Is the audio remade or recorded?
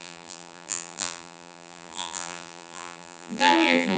remade